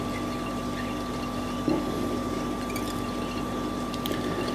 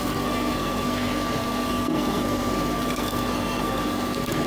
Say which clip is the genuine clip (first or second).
first